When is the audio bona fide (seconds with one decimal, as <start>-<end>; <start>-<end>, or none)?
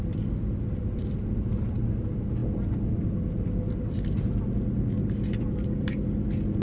0.0-6.6